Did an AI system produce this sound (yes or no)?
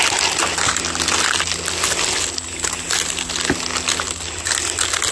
no